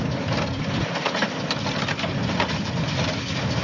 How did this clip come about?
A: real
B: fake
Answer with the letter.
A